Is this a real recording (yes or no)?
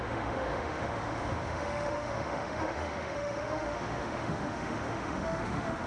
no